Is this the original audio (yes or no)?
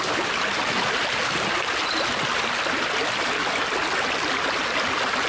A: yes